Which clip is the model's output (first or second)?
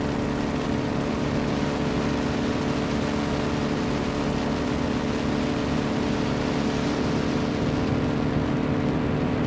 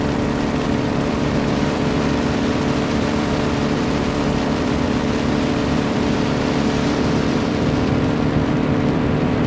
second